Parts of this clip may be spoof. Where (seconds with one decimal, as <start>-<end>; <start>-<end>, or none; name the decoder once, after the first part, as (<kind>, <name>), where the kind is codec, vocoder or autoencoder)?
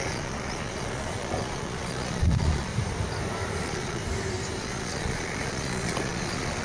0.0-2.7 (vocoder, Vocos); 3.6-4.0; 4.6-6.6